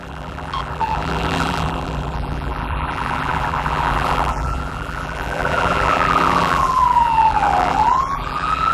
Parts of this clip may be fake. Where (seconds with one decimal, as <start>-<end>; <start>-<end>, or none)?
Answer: 0.0-8.7